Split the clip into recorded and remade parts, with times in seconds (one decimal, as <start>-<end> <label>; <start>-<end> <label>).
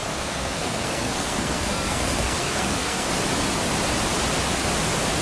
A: 0.0-3.1 remade; 3.1-5.2 recorded